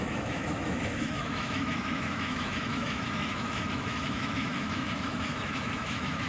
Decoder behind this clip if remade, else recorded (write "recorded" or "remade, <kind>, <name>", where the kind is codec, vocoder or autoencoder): remade, autoencoder, DAC-VAE